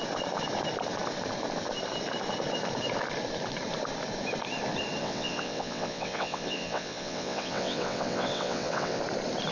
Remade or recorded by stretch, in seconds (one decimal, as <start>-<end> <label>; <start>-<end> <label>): 0.0-5.0 recorded; 5.0-9.0 remade; 9.0-9.5 recorded